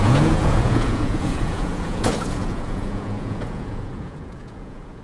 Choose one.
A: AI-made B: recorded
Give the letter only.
A